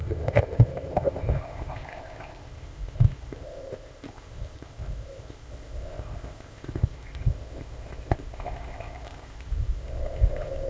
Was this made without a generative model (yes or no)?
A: no